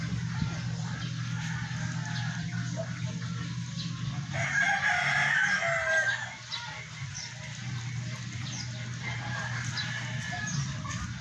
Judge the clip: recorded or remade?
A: recorded